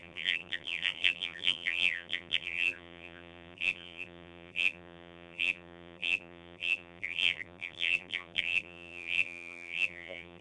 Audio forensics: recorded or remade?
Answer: remade